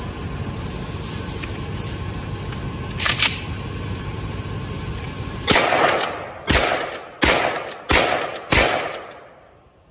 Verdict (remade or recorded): recorded